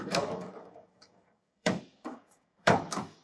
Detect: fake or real fake